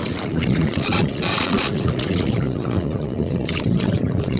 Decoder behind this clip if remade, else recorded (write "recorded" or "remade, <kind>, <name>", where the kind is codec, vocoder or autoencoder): remade, vocoder, Vocos